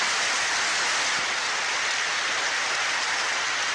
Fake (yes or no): no